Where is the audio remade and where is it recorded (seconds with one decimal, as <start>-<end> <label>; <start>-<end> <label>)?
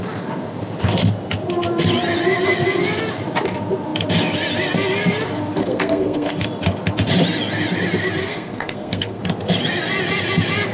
0.0-5.6 recorded; 5.6-6.3 remade; 6.3-8.2 recorded; 8.2-9.2 remade; 9.2-10.7 recorded